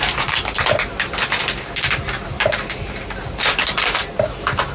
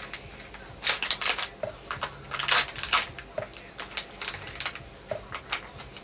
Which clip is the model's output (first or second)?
first